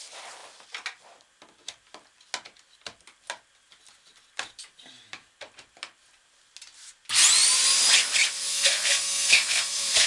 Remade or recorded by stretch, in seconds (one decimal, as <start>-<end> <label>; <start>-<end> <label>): 0.0-8.5 recorded; 8.5-10.1 remade